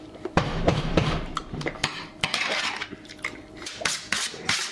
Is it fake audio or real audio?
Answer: fake